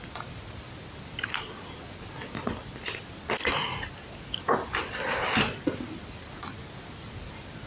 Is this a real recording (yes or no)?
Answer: yes